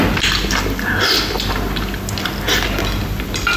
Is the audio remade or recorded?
recorded